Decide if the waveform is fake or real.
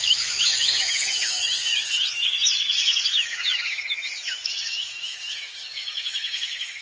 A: fake